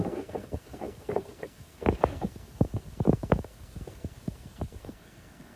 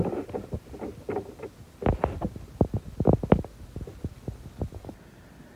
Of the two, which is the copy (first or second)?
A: first